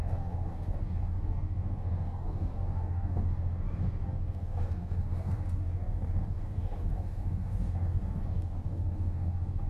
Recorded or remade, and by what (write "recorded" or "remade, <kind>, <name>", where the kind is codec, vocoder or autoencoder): remade, codec, DAC